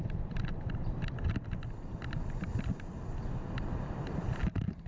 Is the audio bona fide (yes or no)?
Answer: yes